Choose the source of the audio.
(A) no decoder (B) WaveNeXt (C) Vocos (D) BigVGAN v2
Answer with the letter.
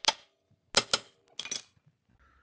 A